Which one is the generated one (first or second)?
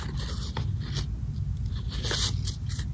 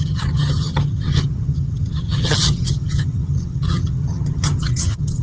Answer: second